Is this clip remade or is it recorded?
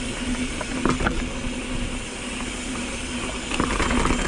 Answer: recorded